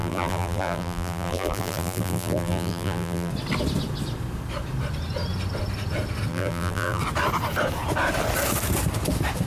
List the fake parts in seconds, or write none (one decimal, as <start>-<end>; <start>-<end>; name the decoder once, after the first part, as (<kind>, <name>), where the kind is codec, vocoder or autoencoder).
0.0-3.3 (vocoder, BigVGAN v2); 6.3-7.0